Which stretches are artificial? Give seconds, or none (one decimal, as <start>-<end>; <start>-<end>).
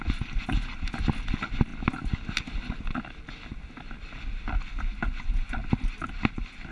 none